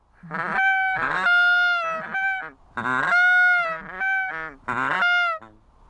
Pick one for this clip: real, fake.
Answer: real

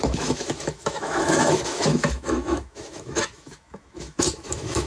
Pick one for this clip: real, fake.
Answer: fake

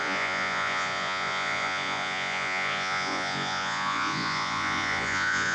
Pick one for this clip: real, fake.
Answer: fake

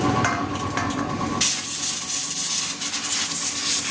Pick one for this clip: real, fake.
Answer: real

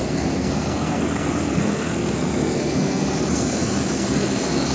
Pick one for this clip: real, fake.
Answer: fake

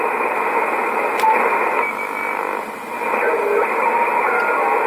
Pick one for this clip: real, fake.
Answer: real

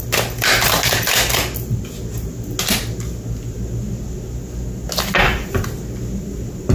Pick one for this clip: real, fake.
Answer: real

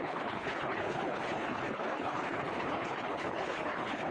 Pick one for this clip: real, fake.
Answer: fake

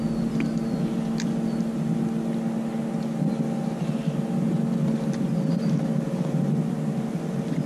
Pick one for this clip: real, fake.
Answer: real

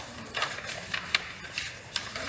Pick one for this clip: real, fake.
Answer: fake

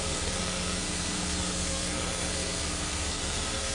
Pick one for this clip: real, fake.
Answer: fake